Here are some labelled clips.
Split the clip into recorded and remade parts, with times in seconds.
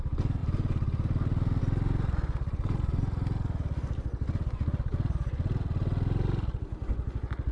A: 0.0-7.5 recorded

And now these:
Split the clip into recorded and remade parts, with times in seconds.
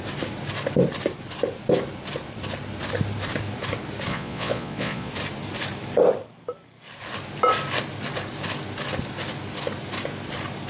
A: 0.0-4.1 recorded; 4.1-5.1 remade; 5.1-10.7 recorded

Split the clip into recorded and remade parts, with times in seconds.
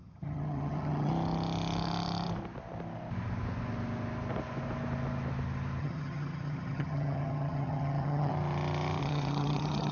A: 0.0-1.1 remade; 1.1-5.8 recorded; 5.8-8.3 remade; 8.3-9.0 recorded; 9.0-9.9 remade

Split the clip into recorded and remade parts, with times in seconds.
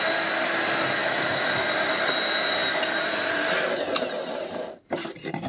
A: 0.0-1.0 recorded; 1.0-1.5 remade; 1.5-5.5 recorded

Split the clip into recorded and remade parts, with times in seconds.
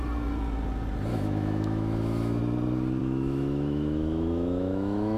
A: 0.0-1.1 recorded; 1.1-2.4 remade; 2.4-3.0 recorded; 3.0-5.2 remade